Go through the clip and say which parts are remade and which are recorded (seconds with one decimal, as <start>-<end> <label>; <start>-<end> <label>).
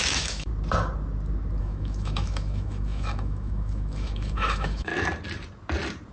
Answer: 0.0-0.5 remade; 0.5-1.6 recorded; 1.6-4.9 remade; 4.9-6.1 recorded